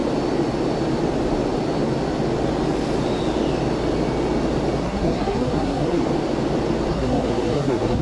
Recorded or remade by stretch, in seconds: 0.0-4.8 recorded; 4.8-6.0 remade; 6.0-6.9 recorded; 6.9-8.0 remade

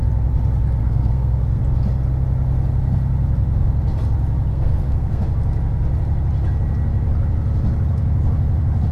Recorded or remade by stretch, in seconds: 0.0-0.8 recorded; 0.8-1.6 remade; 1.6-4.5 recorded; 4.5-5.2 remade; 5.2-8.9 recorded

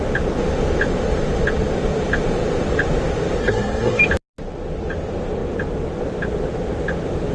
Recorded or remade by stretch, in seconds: 0.0-3.4 recorded; 3.4-4.0 remade; 4.0-7.3 recorded

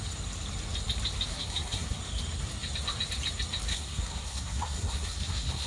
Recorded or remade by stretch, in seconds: 0.0-1.3 recorded; 1.3-2.0 remade; 2.0-3.7 recorded; 3.7-5.7 remade

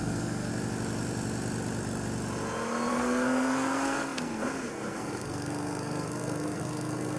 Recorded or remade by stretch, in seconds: 0.0-0.5 remade; 0.5-2.9 recorded; 2.9-7.2 remade

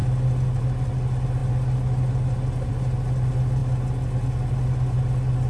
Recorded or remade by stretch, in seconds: 0.0-5.5 recorded

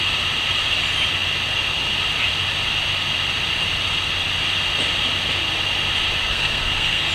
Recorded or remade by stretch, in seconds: 0.0-6.2 recorded; 6.2-7.1 remade

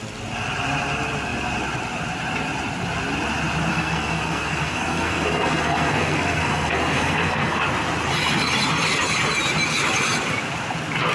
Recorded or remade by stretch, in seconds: 0.0-3.7 recorded; 3.7-7.6 remade; 7.6-11.1 recorded